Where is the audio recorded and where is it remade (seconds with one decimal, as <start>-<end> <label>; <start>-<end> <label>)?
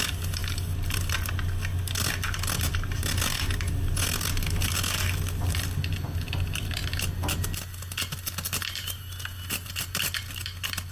0.0-10.9 recorded